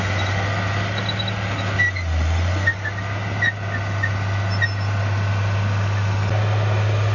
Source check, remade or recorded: recorded